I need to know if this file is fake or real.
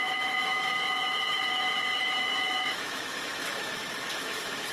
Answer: fake